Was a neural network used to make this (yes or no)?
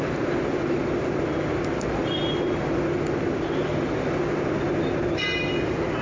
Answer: no